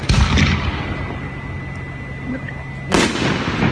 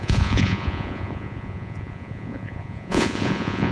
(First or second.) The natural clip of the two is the first